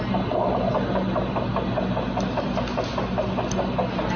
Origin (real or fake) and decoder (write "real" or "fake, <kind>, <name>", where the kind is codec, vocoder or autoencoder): real